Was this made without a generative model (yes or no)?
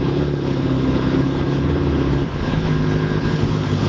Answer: no